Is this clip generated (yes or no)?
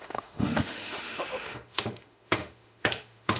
yes